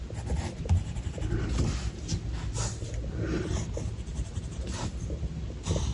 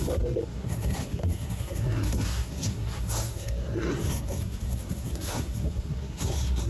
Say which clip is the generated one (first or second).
second